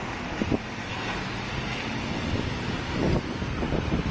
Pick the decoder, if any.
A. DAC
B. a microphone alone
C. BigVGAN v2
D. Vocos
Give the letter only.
B